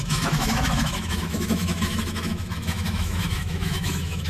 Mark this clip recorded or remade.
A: remade